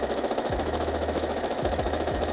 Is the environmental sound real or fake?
fake